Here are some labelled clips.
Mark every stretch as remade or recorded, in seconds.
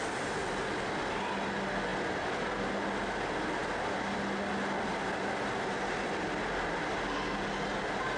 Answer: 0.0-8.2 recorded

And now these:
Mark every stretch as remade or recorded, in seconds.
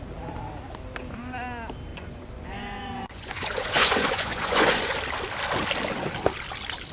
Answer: 0.0-1.9 recorded; 1.9-4.9 remade; 4.9-6.9 recorded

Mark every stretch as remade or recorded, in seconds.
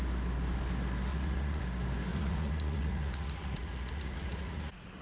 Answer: 0.0-1.1 recorded; 1.1-1.6 remade; 1.6-2.1 recorded; 2.1-5.0 remade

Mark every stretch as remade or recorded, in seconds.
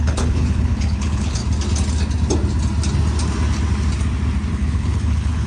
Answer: 0.0-1.4 remade; 1.4-4.5 recorded; 4.5-5.5 remade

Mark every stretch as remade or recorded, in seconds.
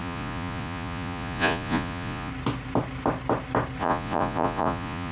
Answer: 0.0-2.3 remade; 2.3-3.8 recorded; 3.8-5.1 remade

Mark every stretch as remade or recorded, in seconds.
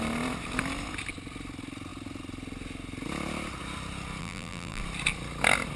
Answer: 0.0-4.2 recorded; 4.2-4.8 remade; 4.8-5.8 recorded